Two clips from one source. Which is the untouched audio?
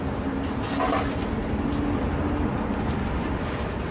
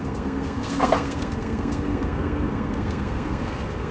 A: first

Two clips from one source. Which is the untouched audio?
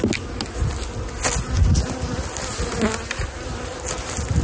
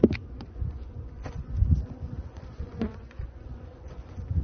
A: first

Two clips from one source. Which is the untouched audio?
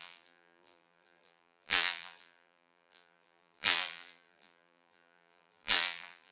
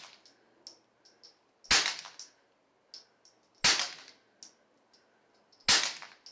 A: second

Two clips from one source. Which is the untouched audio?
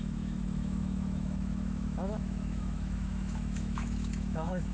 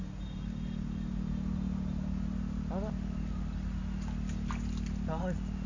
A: second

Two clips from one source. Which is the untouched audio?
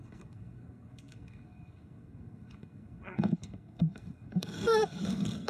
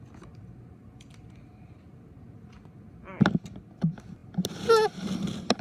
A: second